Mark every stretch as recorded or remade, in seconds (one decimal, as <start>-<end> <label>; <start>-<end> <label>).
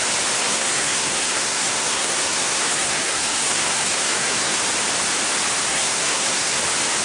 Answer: 0.0-0.4 recorded; 0.4-4.6 remade; 4.6-5.7 recorded; 5.7-6.6 remade; 6.6-7.0 recorded